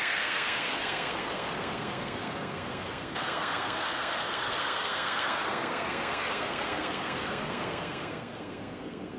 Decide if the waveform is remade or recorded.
remade